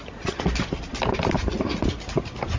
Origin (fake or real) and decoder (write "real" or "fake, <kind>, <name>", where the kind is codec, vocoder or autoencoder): real